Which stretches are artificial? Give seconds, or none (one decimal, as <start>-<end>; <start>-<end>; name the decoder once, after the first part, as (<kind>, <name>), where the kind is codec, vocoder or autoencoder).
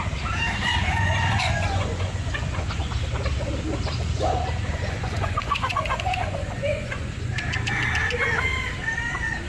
0.9-2.9 (vocoder, Vocos); 4.7-7.3